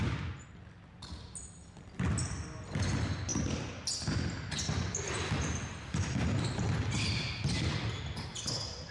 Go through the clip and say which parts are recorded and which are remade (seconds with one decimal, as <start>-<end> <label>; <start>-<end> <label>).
0.0-8.9 recorded

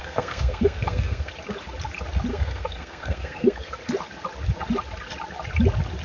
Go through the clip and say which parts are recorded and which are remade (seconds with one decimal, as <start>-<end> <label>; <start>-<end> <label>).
0.0-1.3 remade; 1.3-2.3 recorded; 2.3-3.7 remade; 3.7-6.0 recorded

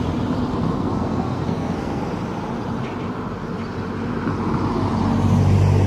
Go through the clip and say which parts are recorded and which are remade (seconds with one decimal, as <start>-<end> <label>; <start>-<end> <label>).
0.0-0.5 recorded; 0.5-2.0 remade; 2.0-5.9 recorded

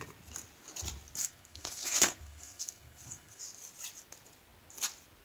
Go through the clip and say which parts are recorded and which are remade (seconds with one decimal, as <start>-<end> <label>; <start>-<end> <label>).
0.0-1.2 recorded; 1.2-3.4 remade; 3.4-5.2 recorded

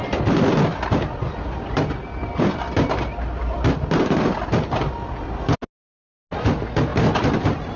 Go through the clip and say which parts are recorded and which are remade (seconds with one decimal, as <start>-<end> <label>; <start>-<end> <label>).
0.0-7.8 recorded

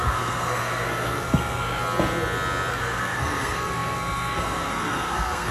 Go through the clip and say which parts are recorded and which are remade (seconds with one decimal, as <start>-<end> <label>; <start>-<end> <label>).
0.0-1.8 remade; 1.8-2.7 recorded; 2.7-5.5 remade